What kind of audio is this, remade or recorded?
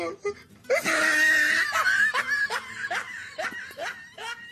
recorded